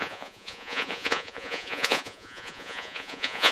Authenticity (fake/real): fake